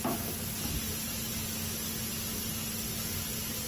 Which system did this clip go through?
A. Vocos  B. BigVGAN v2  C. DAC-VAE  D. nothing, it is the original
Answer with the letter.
D